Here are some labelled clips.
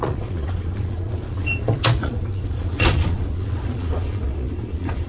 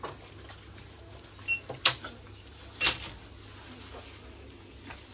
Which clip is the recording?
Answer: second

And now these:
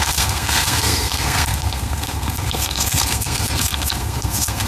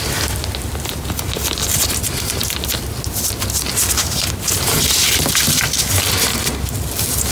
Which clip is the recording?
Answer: second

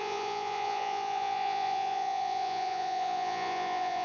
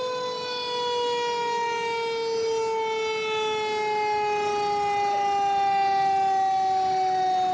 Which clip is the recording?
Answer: second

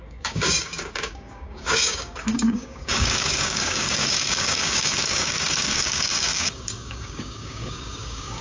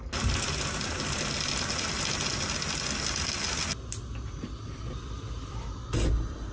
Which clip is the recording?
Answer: second